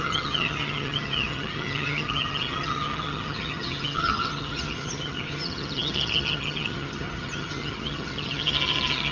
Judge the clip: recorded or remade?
remade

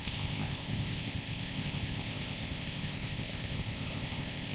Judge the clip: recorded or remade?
remade